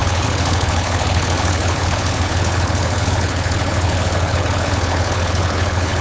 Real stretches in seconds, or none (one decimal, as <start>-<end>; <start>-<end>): none